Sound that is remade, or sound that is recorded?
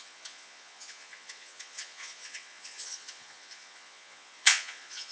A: remade